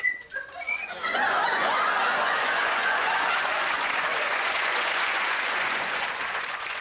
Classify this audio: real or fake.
fake